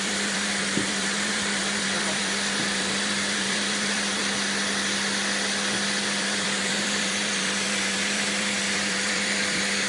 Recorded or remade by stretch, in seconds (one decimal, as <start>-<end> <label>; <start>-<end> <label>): 0.0-4.2 remade; 4.2-6.0 recorded; 6.0-9.9 remade